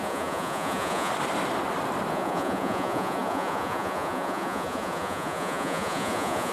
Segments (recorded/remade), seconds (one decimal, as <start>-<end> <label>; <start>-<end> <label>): 0.0-1.1 remade; 1.1-2.1 recorded; 2.1-6.5 remade